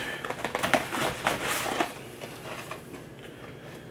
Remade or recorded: recorded